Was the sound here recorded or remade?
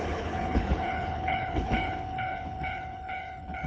remade